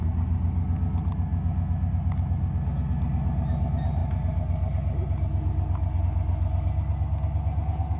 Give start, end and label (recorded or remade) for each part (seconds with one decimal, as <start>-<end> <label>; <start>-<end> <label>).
0.0-8.0 recorded